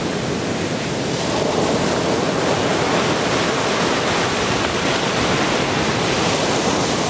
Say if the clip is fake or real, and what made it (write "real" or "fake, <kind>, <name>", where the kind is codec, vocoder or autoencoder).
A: real